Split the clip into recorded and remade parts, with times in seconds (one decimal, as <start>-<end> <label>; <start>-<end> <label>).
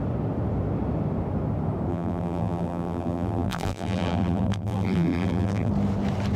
0.0-1.9 recorded; 1.9-5.7 remade; 5.7-6.4 recorded